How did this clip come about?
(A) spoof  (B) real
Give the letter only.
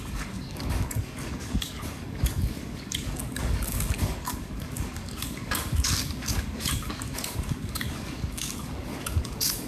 A